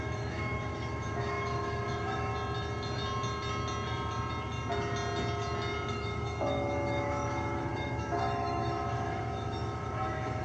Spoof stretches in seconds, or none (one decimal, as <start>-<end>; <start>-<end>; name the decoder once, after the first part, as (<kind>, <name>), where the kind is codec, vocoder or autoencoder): 0.0-2.3 (autoencoder, DAC-VAE); 5.9-10.4